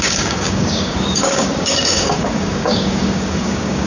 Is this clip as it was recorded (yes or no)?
no